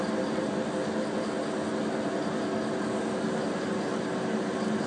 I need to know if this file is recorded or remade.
recorded